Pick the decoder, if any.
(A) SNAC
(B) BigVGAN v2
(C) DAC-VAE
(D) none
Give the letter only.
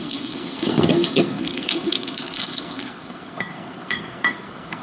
A